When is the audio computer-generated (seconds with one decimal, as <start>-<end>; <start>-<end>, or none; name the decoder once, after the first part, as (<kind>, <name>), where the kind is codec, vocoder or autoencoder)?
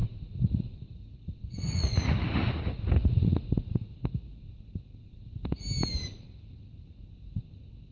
0.0-4.5 (vocoder, Vocos); 5.0-5.6